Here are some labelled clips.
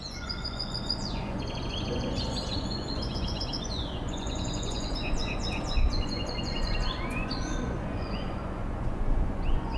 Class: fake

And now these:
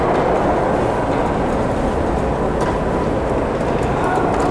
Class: real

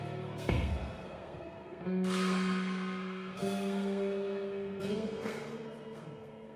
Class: fake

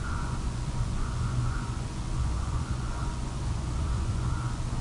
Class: fake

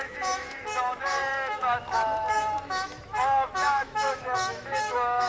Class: fake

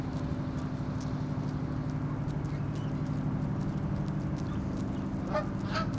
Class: real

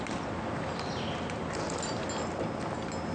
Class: real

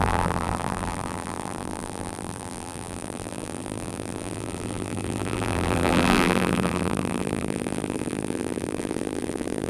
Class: fake